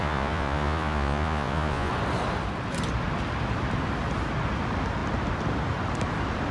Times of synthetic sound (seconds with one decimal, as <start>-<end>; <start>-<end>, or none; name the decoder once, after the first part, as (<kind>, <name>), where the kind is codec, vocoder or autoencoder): 0.0-1.9 (vocoder, Vocos)

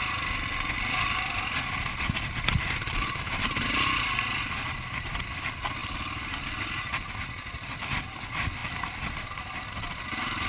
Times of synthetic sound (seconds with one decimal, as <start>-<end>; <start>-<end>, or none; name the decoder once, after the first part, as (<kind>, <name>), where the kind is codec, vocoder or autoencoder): 5.8-6.6 (vocoder, BigVGAN v2)

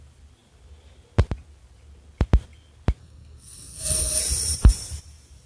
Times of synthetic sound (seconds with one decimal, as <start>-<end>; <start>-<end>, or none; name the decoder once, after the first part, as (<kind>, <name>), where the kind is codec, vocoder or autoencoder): 3.0-4.2 (codec, SNAC)

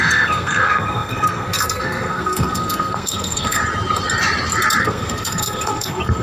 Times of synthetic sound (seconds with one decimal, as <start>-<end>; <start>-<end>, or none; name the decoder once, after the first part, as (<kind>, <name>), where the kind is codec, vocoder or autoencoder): 0.0-3.6 (codec, SNAC); 4.8-6.2

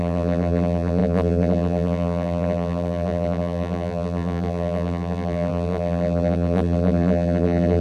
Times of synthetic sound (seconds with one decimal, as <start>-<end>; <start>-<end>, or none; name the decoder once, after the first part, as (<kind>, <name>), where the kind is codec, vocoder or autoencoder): 0.0-7.8 (vocoder, BigVGAN v2)

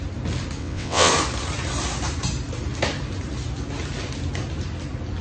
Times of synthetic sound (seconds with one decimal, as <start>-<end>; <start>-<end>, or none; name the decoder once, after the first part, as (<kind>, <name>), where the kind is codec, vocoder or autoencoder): 0.6-1.1 (vocoder, WaveNeXt)